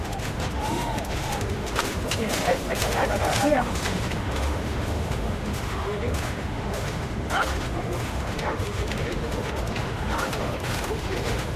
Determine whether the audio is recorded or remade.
remade